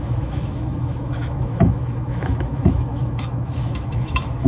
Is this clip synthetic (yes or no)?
yes